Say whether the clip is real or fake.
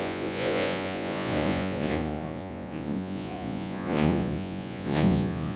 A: fake